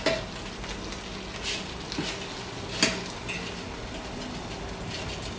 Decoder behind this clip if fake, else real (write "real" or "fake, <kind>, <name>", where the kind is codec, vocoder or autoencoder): real